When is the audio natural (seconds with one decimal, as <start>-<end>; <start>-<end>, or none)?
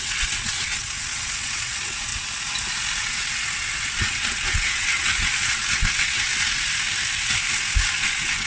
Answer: 2.1-3.0; 6.3-7.9